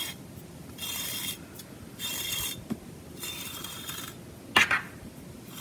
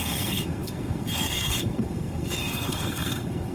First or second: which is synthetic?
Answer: second